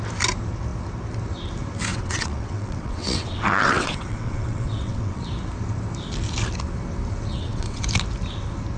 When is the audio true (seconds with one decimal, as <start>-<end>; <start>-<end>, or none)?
0.0-1.9; 5.2-7.3; 7.8-8.8